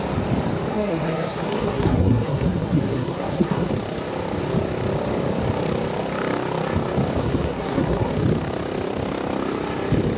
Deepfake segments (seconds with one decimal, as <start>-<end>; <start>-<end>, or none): 0.7-3.7; 7.2-8.1